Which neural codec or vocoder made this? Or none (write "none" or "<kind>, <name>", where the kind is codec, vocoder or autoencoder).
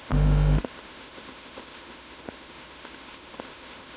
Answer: autoencoder, DAC-VAE